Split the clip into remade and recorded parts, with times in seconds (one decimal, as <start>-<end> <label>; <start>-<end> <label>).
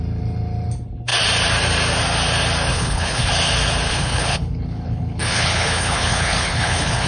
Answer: 0.0-2.7 recorded; 2.7-3.3 remade; 3.3-3.9 recorded; 3.9-7.1 remade